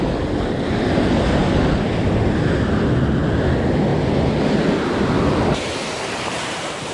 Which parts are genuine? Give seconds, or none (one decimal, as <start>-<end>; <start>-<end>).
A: 0.0-6.9

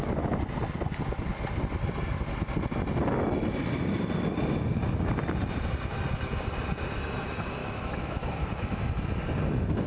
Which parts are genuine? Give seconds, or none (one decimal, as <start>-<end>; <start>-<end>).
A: 0.0-7.6; 8.8-9.9

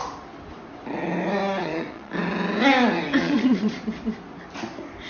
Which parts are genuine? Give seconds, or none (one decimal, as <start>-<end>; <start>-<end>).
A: 0.0-1.6; 2.1-3.2; 3.7-5.1

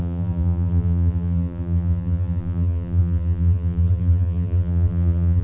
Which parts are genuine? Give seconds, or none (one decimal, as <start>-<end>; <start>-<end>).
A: none